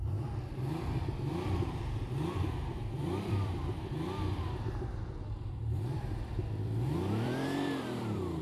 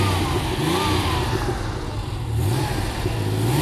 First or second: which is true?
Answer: second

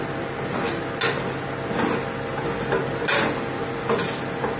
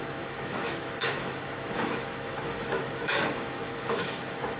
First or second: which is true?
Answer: first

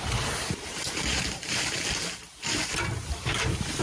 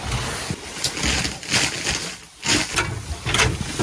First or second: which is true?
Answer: second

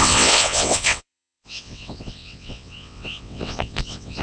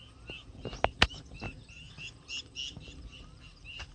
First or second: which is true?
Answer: second